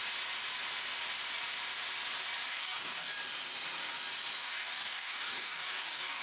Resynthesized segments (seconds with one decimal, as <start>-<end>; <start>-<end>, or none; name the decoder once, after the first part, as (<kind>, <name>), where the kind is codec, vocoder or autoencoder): 2.5-3.1 (codec, DAC); 4.4-6.2